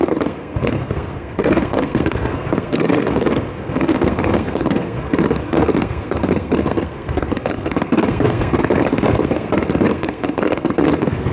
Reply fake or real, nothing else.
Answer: fake